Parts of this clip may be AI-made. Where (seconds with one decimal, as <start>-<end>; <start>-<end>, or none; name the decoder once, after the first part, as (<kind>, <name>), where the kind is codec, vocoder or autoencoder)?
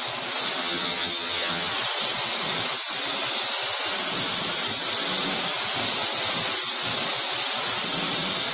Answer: 0.6-1.7 (vocoder, HiFi-GAN)